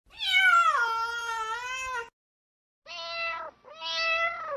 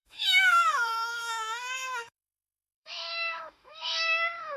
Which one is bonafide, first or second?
first